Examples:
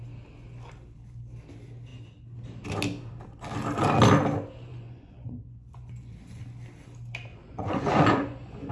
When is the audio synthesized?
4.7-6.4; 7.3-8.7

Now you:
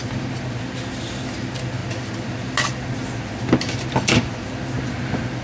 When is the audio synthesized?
none

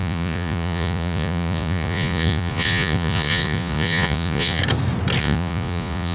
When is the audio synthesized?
0.0-4.6; 5.2-6.1

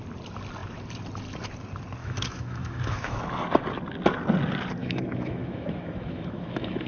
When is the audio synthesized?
2.0-3.2; 4.8-6.9

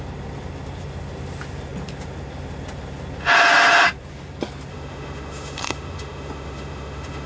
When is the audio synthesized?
4.7-7.3

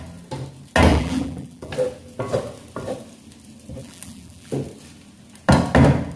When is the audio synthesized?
0.9-1.7; 3.8-4.5

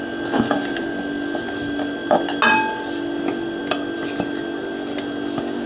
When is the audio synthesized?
none